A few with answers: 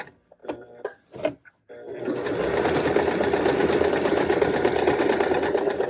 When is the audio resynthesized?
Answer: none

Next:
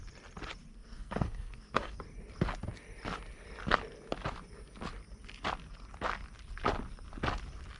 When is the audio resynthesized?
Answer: 0.7-2.0 (codec, SNAC)

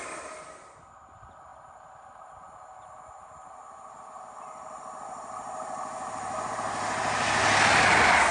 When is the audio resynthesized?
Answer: none